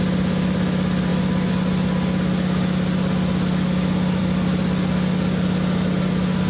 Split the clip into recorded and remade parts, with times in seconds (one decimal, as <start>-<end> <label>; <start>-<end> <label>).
0.0-6.5 recorded